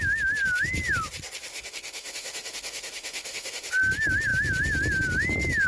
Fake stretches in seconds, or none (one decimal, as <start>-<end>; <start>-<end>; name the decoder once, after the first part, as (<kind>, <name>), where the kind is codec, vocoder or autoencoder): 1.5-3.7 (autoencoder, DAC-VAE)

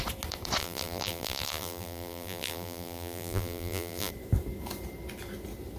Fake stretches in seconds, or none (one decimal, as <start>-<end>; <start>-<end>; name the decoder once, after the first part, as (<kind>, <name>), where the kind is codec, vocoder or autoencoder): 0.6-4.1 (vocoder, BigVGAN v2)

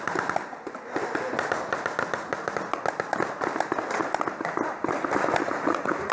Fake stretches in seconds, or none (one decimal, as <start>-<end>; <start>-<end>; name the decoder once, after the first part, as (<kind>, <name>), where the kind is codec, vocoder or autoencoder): 5.4-6.1 (vocoder, Vocos)

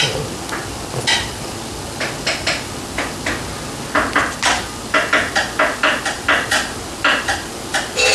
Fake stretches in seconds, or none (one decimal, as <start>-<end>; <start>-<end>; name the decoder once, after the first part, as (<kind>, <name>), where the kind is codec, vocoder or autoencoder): none

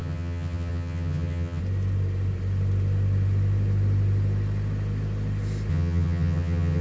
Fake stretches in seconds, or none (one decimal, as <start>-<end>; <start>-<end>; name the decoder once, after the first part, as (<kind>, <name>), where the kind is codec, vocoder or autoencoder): 0.0-1.6 (vocoder, HiFi-GAN); 5.7-6.8

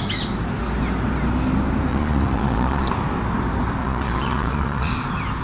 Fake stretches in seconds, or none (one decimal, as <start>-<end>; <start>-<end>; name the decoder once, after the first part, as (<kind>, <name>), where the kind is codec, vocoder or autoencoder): 1.9-2.9 (vocoder, Vocos); 3.8-4.9